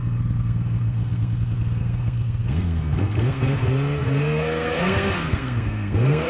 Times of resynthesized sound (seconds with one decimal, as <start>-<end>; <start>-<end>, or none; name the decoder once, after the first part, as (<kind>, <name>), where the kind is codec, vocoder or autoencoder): 0.0-6.3 (codec, SNAC)